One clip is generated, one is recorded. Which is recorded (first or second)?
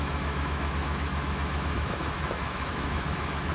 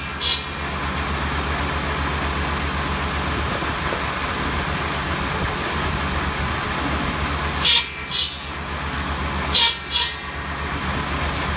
second